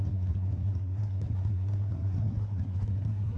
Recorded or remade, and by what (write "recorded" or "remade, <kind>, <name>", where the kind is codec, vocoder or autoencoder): remade, codec, SNAC